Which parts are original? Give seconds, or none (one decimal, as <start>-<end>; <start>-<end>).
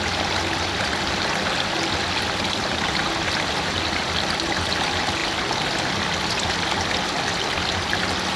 0.0-8.4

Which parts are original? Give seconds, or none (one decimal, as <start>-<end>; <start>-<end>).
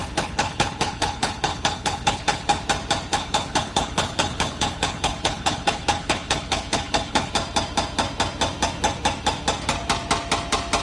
2.6-3.1; 7.3-10.8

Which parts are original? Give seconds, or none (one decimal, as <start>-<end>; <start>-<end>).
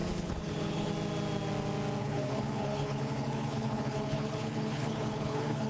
0.9-2.0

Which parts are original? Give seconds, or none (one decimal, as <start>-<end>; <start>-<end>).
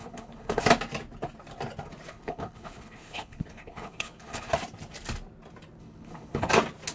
0.6-2.1; 4.5-5.8; 6.5-6.9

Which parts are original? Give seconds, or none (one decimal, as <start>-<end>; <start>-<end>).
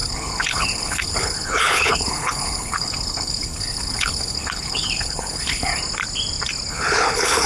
5.7-6.7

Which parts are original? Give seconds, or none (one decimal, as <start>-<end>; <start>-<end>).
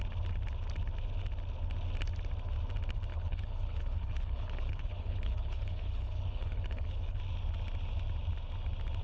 0.0-3.1; 7.2-9.0